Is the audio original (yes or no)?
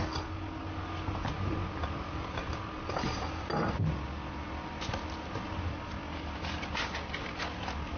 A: yes